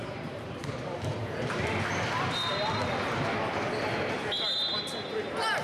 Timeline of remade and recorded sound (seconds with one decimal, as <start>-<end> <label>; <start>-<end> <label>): 0.0-1.1 remade; 1.1-5.6 recorded